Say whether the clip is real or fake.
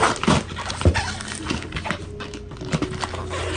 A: real